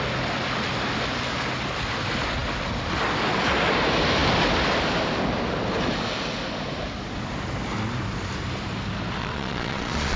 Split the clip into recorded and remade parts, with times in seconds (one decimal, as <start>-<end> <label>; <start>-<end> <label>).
0.0-9.2 recorded; 9.2-10.2 remade